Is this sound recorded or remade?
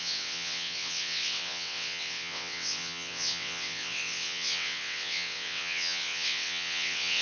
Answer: remade